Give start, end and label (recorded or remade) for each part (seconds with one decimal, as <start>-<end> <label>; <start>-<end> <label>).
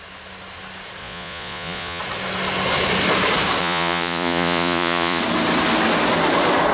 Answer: 0.0-1.0 recorded; 1.0-2.0 remade; 2.0-3.6 recorded; 3.6-5.2 remade; 5.2-6.7 recorded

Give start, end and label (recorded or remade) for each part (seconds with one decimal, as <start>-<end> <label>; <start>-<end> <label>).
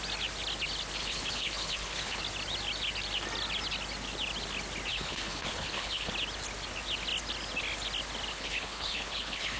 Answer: 0.0-1.0 recorded; 1.0-2.2 remade; 2.2-4.9 recorded; 4.9-6.1 remade; 6.1-8.3 recorded; 8.3-9.6 remade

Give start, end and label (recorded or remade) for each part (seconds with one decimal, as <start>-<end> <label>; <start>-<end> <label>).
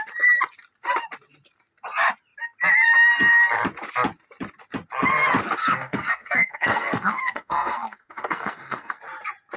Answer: 0.0-5.6 recorded; 5.6-9.0 remade; 9.0-9.6 recorded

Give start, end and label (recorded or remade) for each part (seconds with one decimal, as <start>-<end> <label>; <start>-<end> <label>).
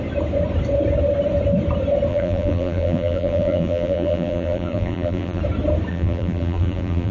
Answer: 0.0-2.1 recorded; 2.1-5.4 remade; 5.4-5.9 recorded; 5.9-7.1 remade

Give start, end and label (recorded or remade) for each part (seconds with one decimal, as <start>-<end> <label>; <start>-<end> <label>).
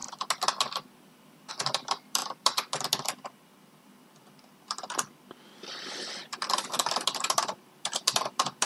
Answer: 0.0-1.5 recorded; 1.5-6.2 remade; 6.2-6.8 recorded; 6.8-8.6 remade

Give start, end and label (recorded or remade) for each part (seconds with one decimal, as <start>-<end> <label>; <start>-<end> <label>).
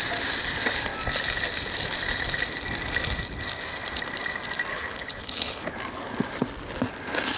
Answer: 0.0-4.7 recorded; 4.7-5.7 remade; 5.7-7.4 recorded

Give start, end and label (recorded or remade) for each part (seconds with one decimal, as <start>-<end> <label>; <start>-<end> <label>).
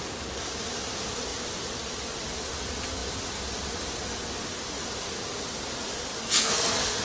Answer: 0.0-6.2 recorded; 6.2-7.0 remade